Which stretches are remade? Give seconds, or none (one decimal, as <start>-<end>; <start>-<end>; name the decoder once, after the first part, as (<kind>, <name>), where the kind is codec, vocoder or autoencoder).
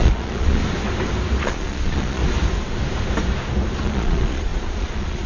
0.0-0.6 (vocoder, Vocos); 1.4-2.2; 3.8-5.3